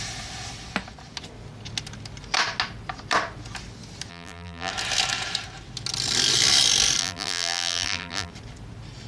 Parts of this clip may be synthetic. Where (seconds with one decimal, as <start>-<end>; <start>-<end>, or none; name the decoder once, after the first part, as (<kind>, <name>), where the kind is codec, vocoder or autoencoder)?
4.1-4.7 (vocoder, BigVGAN v2); 7.0-8.3